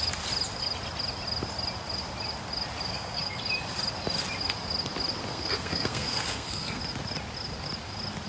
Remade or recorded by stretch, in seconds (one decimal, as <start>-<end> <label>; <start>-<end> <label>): 0.0-2.9 recorded; 2.9-3.4 remade; 3.4-5.3 recorded; 5.3-6.8 remade; 6.8-8.3 recorded